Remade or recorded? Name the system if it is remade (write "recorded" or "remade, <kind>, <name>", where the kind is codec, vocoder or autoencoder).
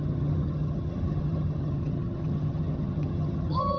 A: remade, vocoder, HiFi-GAN